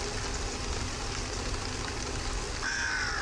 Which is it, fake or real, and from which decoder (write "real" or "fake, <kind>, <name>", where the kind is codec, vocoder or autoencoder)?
real